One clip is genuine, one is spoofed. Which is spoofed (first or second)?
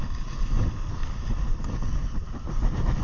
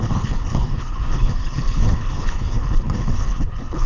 second